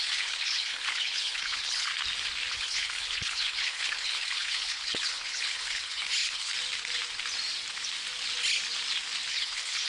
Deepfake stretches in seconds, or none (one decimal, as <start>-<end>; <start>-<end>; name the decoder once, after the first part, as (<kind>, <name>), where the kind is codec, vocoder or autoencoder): 0.0-1.9 (codec, HILCodec); 2.5-6.5; 9.3-9.9